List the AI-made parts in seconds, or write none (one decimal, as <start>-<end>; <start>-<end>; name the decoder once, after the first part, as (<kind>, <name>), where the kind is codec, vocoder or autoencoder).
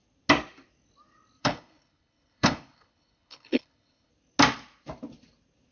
1.4-4.1 (codec, HILCodec)